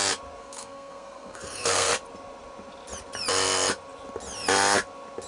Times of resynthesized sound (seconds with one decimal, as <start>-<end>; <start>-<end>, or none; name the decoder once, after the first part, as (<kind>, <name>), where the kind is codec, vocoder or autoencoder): 0.4-1.9 (codec, SNAC)